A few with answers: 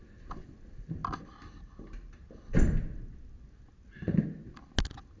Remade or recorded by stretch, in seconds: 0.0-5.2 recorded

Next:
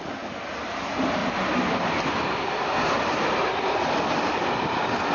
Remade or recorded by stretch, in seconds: 0.0-5.1 recorded

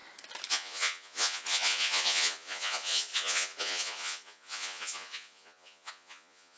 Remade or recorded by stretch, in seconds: 0.0-0.5 recorded; 0.5-6.6 remade

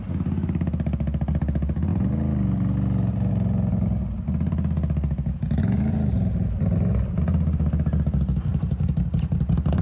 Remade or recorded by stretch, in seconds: 0.0-6.1 recorded; 6.1-7.6 remade; 7.6-8.5 recorded; 8.5-9.8 remade

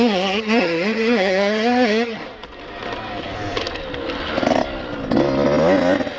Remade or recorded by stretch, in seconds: 0.0-2.2 remade; 2.2-6.2 recorded

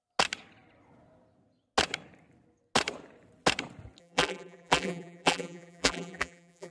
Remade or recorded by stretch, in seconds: 0.0-4.0 recorded; 4.0-6.7 remade

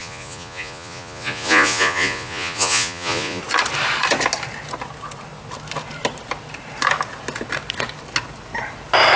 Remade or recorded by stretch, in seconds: 0.0-3.4 remade; 3.4-9.2 recorded